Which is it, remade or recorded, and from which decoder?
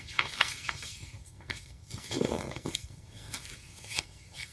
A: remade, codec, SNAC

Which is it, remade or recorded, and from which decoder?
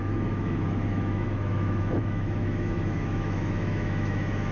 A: remade, autoencoder, DAC-VAE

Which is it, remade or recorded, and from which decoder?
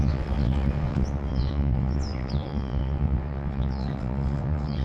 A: remade, vocoder, WaveNeXt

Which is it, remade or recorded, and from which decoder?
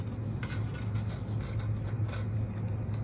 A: recorded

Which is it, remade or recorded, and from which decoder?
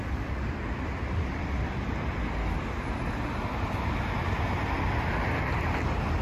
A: recorded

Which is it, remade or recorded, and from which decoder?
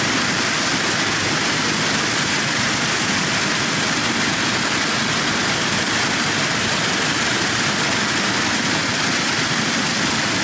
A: recorded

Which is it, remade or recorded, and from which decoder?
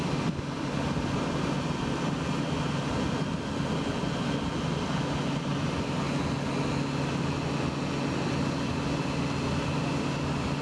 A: recorded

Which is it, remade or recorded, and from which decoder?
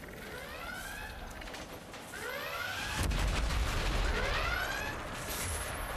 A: recorded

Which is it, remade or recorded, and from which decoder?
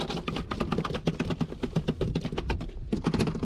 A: recorded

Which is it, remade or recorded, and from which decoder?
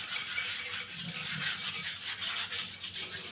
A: recorded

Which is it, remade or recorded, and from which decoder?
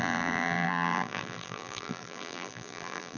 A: remade, vocoder, BigVGAN v2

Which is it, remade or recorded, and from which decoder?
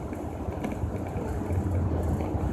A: recorded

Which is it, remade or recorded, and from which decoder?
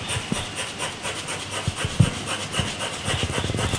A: recorded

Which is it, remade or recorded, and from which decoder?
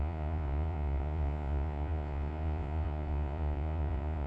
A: remade, vocoder, Vocos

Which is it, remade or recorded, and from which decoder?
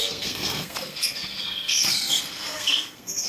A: remade, codec, SNAC